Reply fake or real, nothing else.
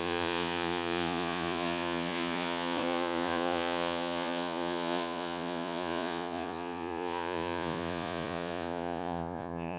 fake